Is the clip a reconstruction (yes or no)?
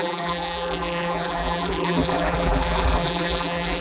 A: yes